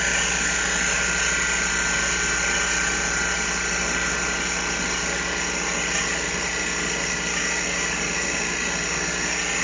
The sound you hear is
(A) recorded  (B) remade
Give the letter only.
A